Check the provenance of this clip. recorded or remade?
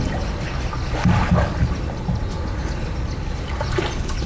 recorded